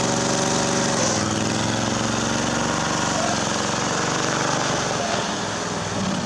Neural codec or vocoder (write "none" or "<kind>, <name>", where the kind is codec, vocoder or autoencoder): none